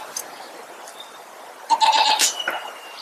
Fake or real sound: real